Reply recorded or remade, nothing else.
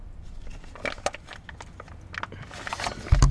recorded